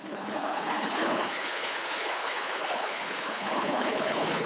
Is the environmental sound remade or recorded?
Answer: remade